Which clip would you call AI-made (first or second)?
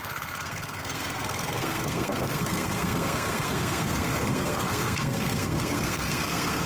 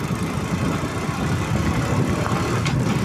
first